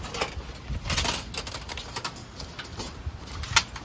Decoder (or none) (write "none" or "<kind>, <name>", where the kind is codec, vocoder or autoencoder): none